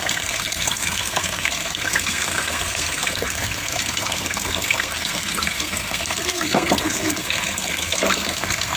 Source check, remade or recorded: remade